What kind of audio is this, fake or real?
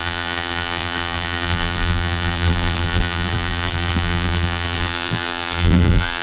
fake